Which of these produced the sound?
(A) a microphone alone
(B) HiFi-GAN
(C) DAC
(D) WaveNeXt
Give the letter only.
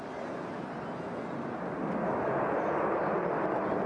A